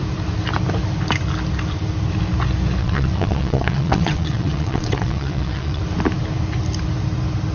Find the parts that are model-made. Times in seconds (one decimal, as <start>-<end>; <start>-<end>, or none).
2.8-5.8